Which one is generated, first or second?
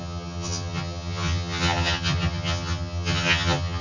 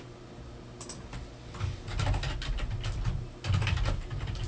first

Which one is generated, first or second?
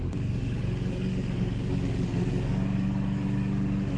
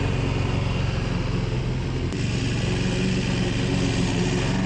first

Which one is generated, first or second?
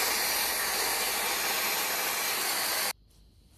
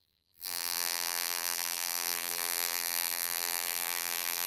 second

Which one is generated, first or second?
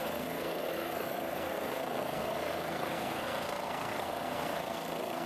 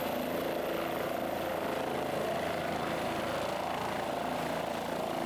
first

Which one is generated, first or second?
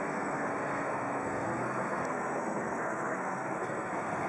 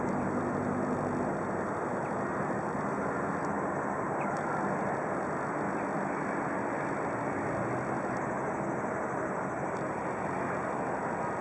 first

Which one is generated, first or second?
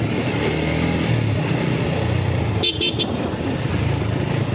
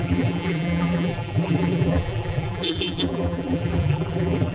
second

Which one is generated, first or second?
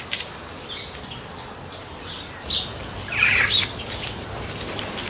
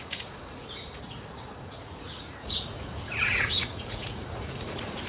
second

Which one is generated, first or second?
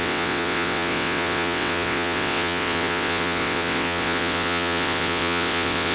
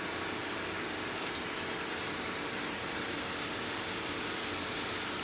first